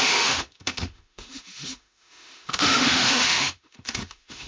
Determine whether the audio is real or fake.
fake